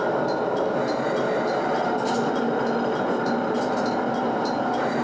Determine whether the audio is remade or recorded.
recorded